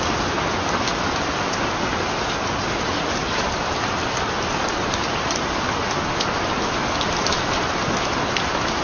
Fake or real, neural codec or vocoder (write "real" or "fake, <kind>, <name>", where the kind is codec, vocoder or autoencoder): real